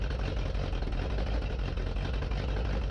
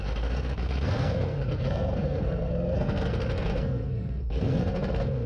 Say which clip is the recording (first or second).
first